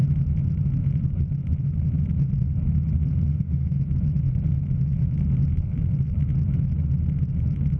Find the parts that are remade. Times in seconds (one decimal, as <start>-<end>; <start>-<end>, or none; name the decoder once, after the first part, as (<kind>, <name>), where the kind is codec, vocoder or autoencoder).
3.3-3.8 (autoencoder, DAC-VAE)